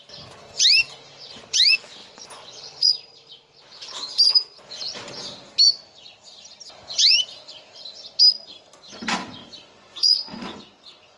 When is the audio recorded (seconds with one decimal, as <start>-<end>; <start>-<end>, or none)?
0.0-2.0; 2.9-9.4